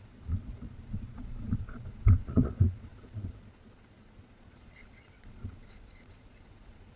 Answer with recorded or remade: remade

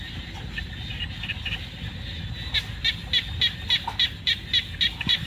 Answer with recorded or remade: recorded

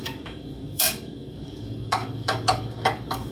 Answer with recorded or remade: remade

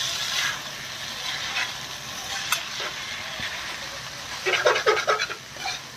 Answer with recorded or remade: recorded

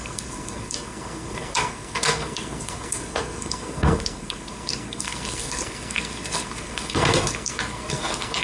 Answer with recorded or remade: remade